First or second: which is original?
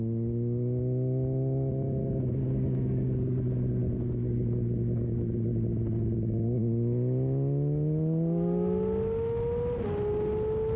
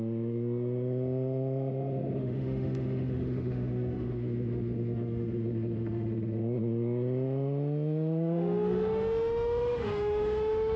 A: first